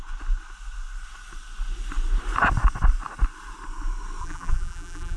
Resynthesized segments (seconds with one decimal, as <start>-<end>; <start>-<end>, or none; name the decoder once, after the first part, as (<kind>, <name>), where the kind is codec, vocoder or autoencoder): 4.2-5.2 (vocoder, BigVGAN v2)